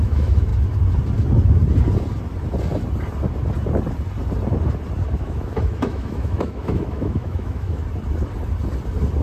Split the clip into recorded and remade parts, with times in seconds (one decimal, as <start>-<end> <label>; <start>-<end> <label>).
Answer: 0.0-0.5 remade; 0.5-5.1 recorded; 5.1-7.8 remade; 7.8-9.2 recorded